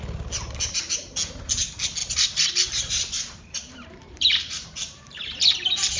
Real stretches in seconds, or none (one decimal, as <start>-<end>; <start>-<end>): 0.0-2.0; 5.2-6.0